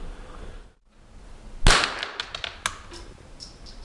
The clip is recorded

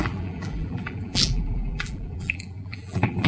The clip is remade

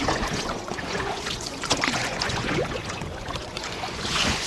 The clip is remade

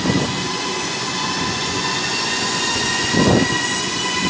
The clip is remade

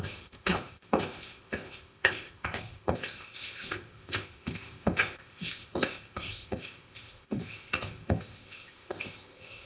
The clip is remade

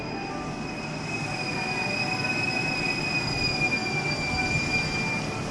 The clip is recorded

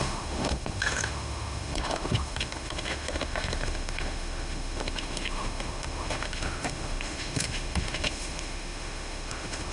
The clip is remade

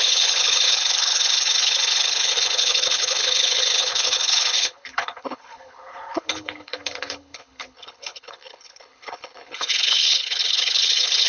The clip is remade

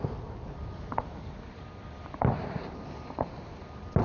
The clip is recorded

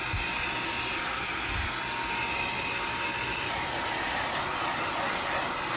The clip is recorded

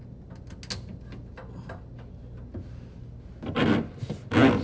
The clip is recorded